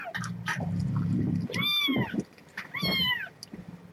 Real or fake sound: real